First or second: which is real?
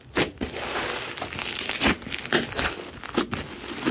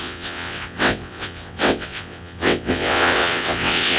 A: first